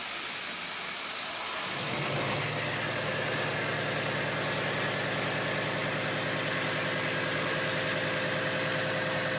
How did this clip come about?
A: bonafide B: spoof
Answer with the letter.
A